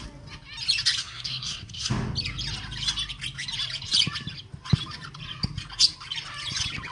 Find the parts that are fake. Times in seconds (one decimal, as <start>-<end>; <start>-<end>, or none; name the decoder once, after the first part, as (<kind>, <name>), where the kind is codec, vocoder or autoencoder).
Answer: 1.0-1.9 (codec, SNAC)